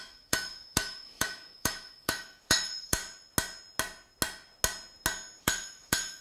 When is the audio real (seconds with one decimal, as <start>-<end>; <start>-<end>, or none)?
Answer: 3.0-5.4